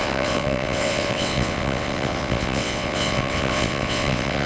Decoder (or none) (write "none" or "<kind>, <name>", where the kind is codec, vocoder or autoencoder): vocoder, WaveNeXt